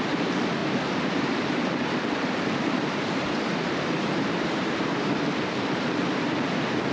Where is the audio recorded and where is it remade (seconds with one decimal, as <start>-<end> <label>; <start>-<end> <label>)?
0.0-6.9 remade